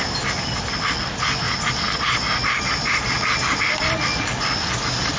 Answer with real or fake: real